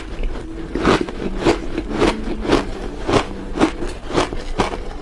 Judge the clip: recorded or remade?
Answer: recorded